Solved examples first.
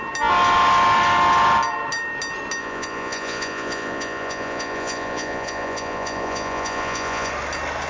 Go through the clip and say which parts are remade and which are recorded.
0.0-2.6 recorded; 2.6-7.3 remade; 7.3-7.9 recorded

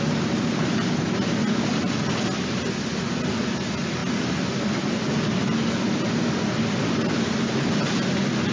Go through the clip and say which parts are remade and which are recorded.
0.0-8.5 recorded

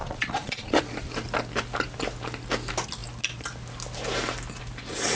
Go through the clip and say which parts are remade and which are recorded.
0.0-0.8 remade; 0.8-5.1 recorded

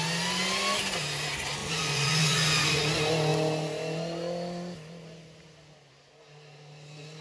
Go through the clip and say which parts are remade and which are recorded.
0.0-1.6 recorded; 1.6-2.8 remade; 2.8-7.2 recorded

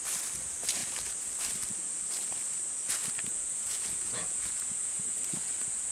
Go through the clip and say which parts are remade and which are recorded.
0.0-3.3 recorded; 3.3-5.9 remade

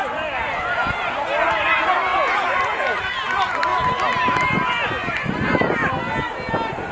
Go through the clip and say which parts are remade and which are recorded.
0.0-6.9 recorded